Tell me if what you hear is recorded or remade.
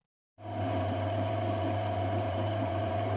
remade